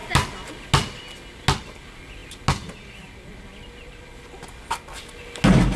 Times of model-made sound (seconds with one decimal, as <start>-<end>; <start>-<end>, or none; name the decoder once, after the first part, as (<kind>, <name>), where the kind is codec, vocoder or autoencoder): none